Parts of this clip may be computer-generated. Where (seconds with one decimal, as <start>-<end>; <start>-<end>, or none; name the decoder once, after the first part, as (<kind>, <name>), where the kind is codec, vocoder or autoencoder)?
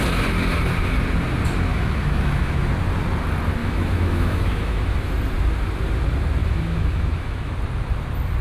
1.7-2.7 (autoencoder, DAC-VAE); 3.6-5.1; 6.4-7.5